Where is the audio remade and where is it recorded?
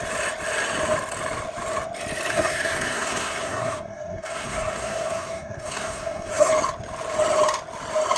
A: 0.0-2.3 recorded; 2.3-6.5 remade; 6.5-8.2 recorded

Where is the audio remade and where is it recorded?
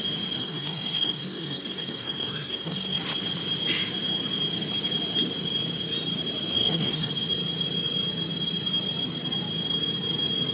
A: 0.0-0.4 recorded; 0.4-3.0 remade; 3.0-6.5 recorded; 6.5-7.1 remade; 7.1-10.5 recorded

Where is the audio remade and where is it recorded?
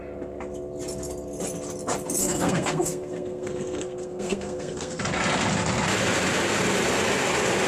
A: 0.0-2.2 recorded; 2.2-5.0 remade; 5.0-7.7 recorded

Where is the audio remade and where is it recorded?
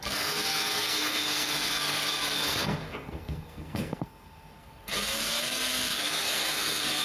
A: 0.0-7.0 remade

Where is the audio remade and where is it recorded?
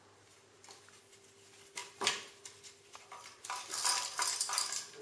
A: 0.0-5.0 recorded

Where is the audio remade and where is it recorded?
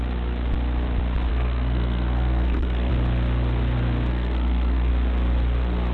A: 0.0-1.3 recorded; 1.3-2.9 remade; 2.9-4.1 recorded; 4.1-4.9 remade; 4.9-5.9 recorded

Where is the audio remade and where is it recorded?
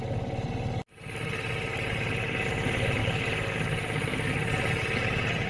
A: 0.0-5.5 recorded